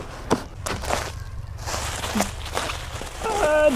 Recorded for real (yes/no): yes